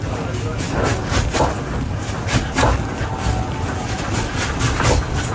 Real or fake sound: real